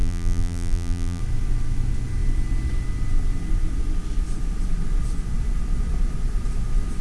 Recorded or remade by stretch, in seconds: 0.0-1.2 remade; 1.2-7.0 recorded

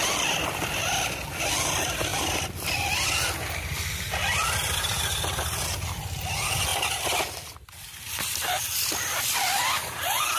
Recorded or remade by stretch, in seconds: 0.0-2.1 recorded; 2.1-5.6 remade; 5.6-6.7 recorded; 6.7-9.7 remade; 9.7-10.4 recorded

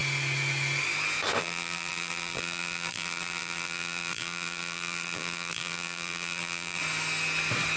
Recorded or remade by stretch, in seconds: 0.0-1.4 recorded; 1.4-6.8 remade; 6.8-7.8 recorded

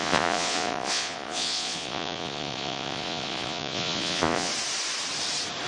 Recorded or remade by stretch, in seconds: 0.0-4.5 remade; 4.5-5.7 recorded

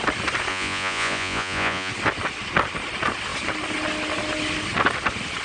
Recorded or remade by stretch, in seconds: 0.0-0.5 recorded; 0.5-1.9 remade; 1.9-5.4 recorded

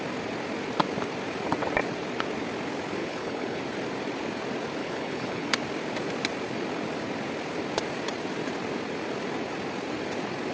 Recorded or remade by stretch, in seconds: 0.0-3.0 recorded; 3.0-3.6 remade; 3.6-4.8 recorded; 4.8-5.5 remade; 5.5-10.5 recorded